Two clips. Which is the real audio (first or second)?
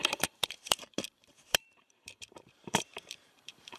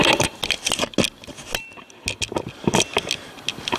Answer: second